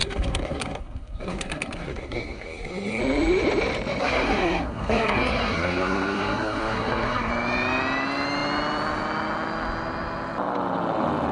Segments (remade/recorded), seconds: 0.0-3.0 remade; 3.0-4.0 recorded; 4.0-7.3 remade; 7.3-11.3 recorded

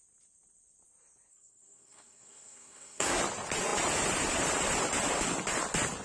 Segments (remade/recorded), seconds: 0.0-1.3 recorded; 1.3-3.2 remade; 3.2-6.0 recorded

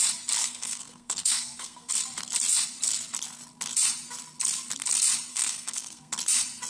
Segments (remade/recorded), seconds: 0.0-0.4 recorded; 0.4-1.9 remade; 1.9-5.3 recorded; 5.3-6.1 remade; 6.1-6.7 recorded

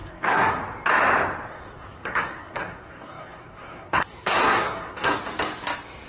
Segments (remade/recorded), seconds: 0.0-0.6 remade; 0.6-1.5 recorded; 1.5-5.2 remade; 5.2-6.1 recorded

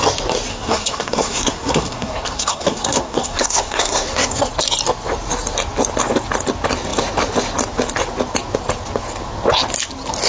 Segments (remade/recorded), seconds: 0.0-0.5 recorded; 0.5-4.5 remade; 4.5-10.3 recorded

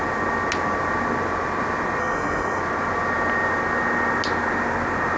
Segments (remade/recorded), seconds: 0.0-2.0 recorded; 2.0-2.6 remade; 2.6-5.2 recorded

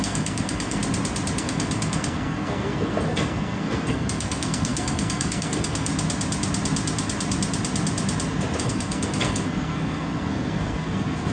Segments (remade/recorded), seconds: 0.0-0.8 remade; 0.8-1.4 recorded; 1.4-5.9 remade; 5.9-8.6 recorded; 8.6-11.3 remade

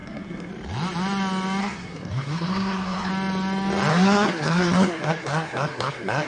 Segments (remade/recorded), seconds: 0.0-0.5 remade; 0.5-1.6 recorded; 1.6-3.1 remade; 3.1-3.9 recorded; 3.9-6.3 remade